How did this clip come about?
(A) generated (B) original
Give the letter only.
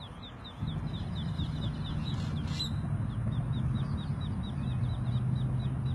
B